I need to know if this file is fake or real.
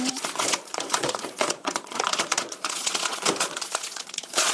fake